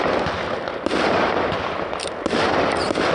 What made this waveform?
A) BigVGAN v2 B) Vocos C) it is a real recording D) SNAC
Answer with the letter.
C